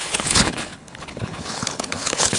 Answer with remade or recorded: remade